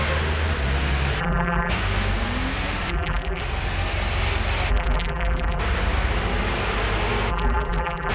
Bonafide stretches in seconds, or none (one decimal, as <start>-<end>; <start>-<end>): 0.0-1.2; 1.7-2.9; 3.4-4.7; 5.6-7.3